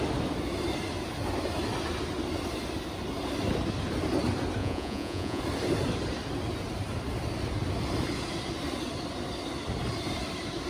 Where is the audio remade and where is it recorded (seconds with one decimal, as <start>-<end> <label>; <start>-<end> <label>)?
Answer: 0.0-4.6 recorded; 4.6-5.4 remade; 5.4-10.7 recorded